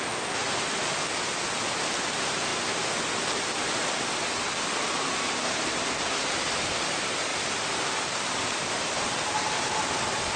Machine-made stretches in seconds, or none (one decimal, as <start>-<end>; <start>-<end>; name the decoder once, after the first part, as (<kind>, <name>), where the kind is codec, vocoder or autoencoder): none